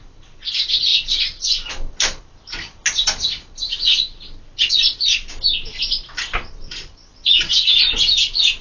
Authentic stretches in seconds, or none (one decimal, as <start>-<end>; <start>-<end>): 0.0-8.6